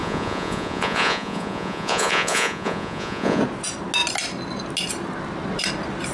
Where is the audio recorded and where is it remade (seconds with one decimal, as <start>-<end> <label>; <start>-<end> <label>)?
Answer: 0.0-3.4 remade; 3.4-6.1 recorded